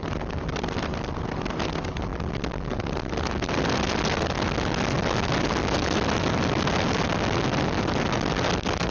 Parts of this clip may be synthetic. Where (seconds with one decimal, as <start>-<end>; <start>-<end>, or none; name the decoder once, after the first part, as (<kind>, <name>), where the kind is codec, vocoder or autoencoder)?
none